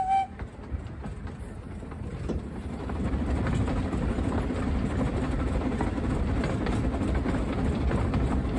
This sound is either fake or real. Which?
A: real